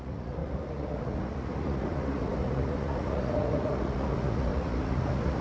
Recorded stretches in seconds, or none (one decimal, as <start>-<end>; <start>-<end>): none